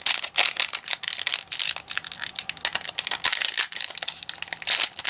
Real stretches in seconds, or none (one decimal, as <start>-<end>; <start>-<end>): 0.0-5.1